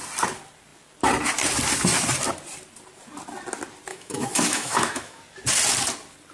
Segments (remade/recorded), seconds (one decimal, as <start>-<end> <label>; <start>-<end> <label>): 0.0-3.9 recorded; 3.9-5.2 remade; 5.2-6.3 recorded